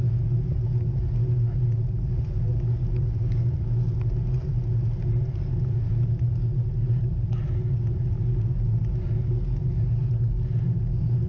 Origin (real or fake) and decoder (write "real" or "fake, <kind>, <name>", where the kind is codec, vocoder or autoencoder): real